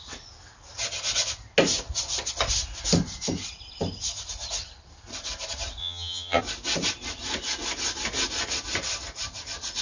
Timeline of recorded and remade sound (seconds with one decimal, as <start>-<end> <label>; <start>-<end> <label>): 0.0-5.8 recorded; 5.8-6.4 remade; 6.4-9.8 recorded